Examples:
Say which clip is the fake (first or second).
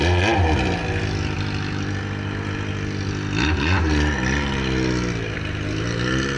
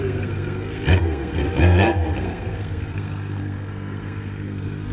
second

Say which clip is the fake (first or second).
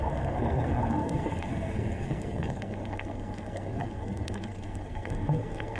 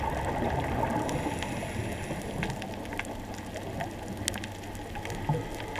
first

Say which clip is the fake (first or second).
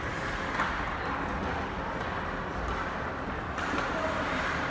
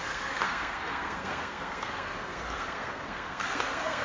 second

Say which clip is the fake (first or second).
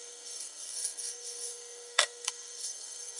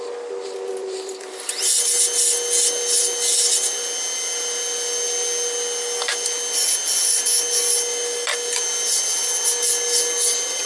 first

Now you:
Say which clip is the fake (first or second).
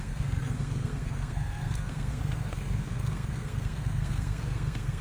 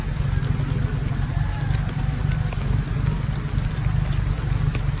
first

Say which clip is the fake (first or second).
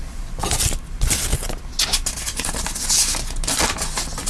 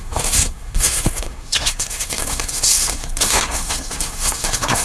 second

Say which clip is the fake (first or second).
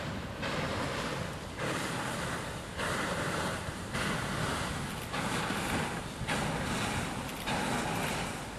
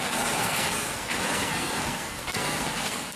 second